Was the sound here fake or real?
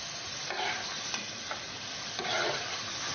real